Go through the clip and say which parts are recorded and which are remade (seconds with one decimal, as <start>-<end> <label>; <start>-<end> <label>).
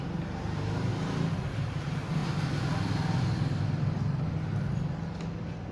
0.0-0.9 remade; 0.9-1.8 recorded; 1.8-2.2 remade; 2.2-5.7 recorded